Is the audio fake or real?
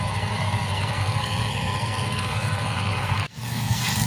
fake